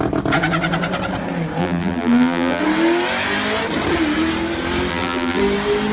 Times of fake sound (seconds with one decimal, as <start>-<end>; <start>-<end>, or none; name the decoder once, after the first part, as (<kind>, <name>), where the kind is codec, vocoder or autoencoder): 1.6-2.6 (vocoder, BigVGAN v2); 4.9-5.4